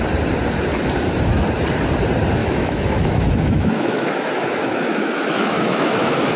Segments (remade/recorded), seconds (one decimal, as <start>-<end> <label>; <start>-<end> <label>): 0.0-2.4 recorded; 2.4-6.4 remade